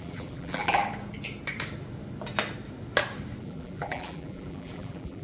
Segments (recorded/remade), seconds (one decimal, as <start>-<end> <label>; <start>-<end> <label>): 0.0-0.8 remade; 0.8-3.4 recorded; 3.4-5.2 remade